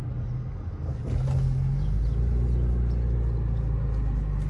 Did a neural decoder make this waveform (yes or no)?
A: no